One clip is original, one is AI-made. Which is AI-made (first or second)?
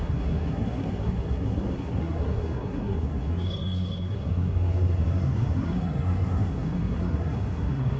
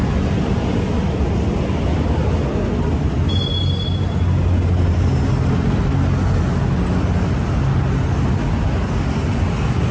first